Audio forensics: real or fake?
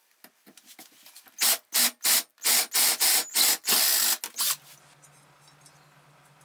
real